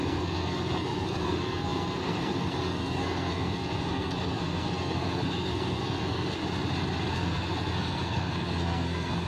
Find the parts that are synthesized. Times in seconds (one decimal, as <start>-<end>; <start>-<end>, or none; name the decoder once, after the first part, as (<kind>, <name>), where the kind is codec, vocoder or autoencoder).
0.0-6.4 (codec, SNAC); 7.1-9.3